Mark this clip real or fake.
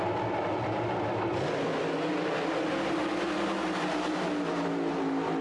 real